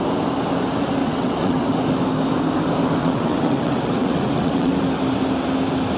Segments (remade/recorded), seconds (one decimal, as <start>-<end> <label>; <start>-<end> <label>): 0.0-1.0 recorded; 1.0-1.7 remade; 1.7-3.0 recorded; 3.0-4.7 remade; 4.7-6.0 recorded